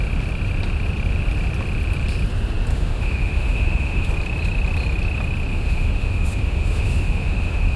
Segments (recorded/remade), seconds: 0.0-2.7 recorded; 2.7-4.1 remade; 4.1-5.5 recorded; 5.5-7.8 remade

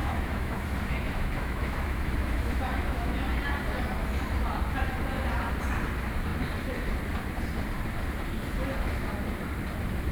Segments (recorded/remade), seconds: 0.0-3.2 remade; 3.2-10.1 recorded

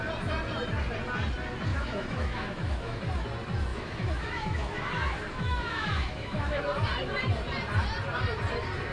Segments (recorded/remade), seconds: 0.0-1.7 recorded; 1.7-3.0 remade; 3.0-3.7 recorded; 3.7-6.6 remade; 6.6-8.9 recorded

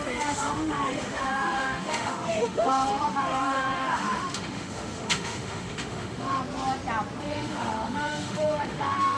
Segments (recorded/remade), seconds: 0.0-6.4 remade; 6.4-7.2 recorded; 7.2-9.2 remade

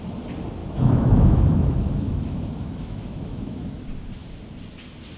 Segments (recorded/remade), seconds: 0.0-0.6 recorded; 0.6-3.7 remade; 3.7-5.2 recorded

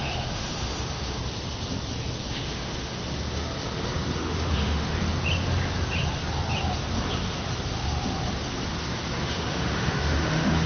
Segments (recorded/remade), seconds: 0.0-1.2 remade; 1.2-2.3 recorded; 2.3-3.0 remade; 3.0-4.2 recorded; 4.2-5.0 remade; 5.0-9.2 recorded; 9.2-10.7 remade

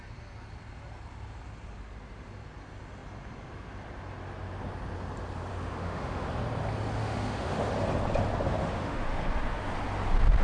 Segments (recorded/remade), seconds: 0.0-5.5 recorded; 5.5-6.3 remade; 6.3-7.0 recorded; 7.0-7.7 remade; 7.7-8.6 recorded; 8.6-9.6 remade; 9.6-10.4 recorded